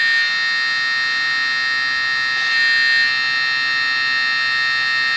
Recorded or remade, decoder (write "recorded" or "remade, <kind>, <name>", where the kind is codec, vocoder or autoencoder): recorded